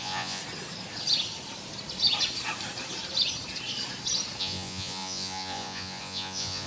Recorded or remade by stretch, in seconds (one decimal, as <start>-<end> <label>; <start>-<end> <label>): 0.0-0.4 remade; 0.4-4.4 recorded; 4.4-6.7 remade